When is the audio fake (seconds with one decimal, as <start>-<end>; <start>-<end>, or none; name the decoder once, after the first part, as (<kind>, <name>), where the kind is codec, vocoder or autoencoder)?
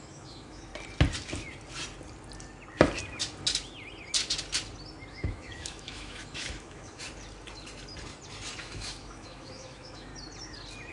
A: 0.0-0.7 (autoencoder, DAC-VAE); 5.1-7.0; 8.6-10.1